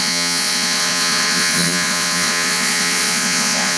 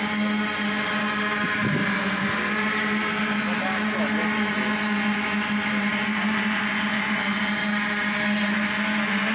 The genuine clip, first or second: second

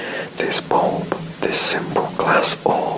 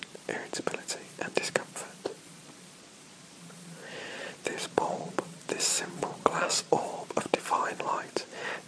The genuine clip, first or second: first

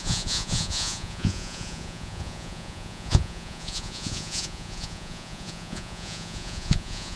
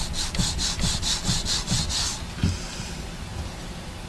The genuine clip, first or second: second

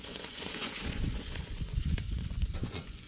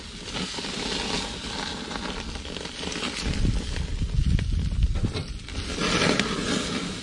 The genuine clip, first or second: second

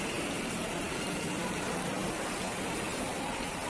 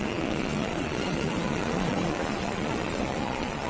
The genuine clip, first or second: first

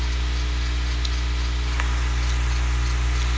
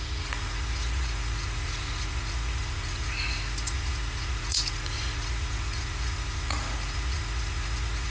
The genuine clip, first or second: first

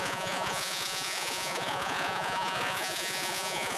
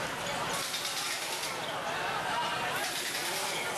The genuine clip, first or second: second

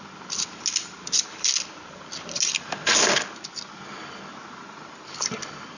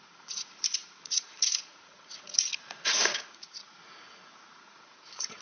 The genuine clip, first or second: first